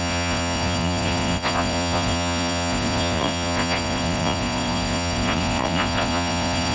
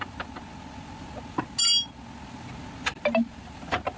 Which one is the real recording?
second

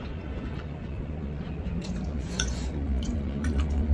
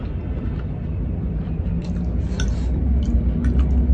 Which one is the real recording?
second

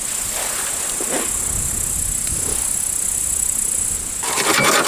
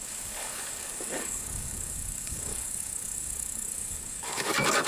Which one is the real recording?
first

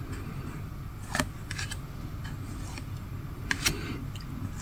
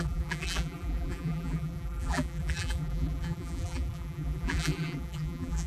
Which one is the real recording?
first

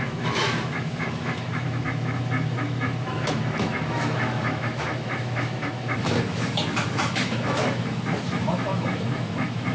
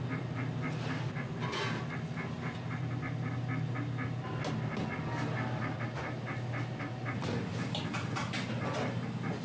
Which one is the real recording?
second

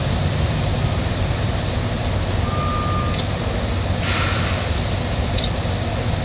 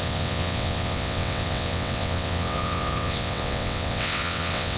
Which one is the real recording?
first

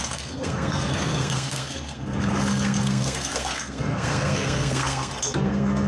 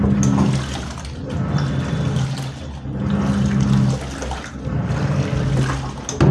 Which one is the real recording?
second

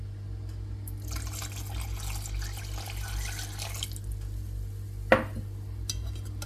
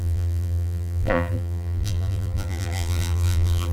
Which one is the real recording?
first